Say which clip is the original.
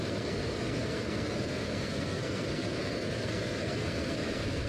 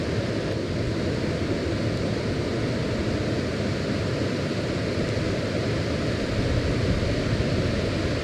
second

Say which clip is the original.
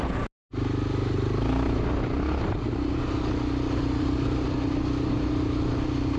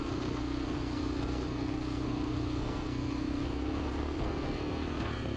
first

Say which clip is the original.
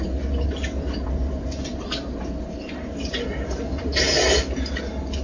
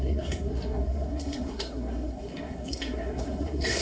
first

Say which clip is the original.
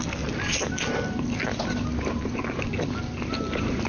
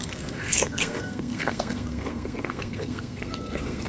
first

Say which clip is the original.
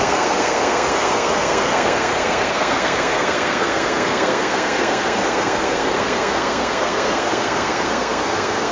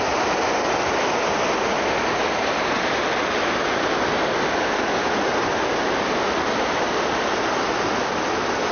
second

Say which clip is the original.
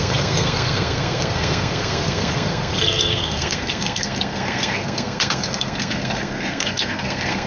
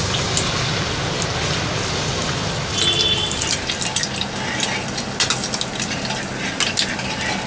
second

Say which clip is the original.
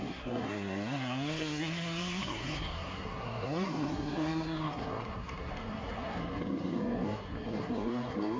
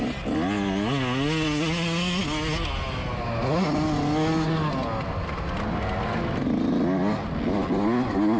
second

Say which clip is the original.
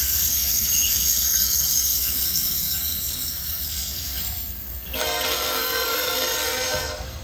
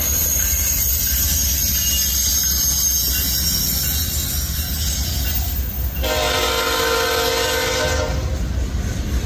second